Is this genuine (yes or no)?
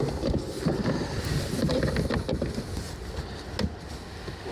yes